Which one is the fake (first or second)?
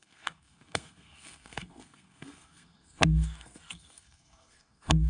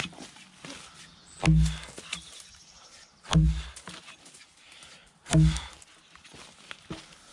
first